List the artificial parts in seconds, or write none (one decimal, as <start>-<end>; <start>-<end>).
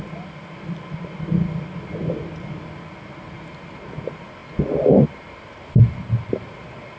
none